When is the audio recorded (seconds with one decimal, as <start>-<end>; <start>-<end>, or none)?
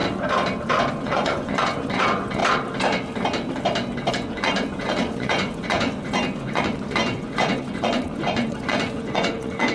0.0-0.9; 2.4-4.1